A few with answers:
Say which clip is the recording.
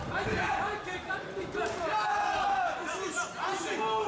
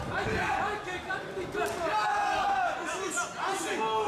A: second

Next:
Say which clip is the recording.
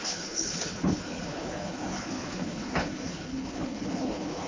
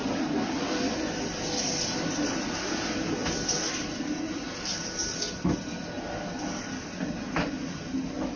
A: second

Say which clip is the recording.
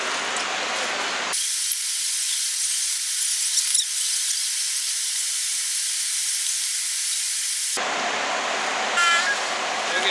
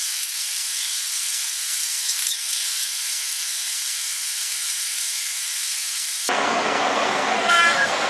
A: first